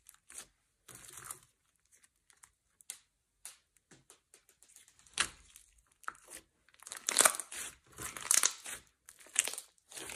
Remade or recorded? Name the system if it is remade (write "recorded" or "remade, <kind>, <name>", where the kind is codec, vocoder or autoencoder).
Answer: recorded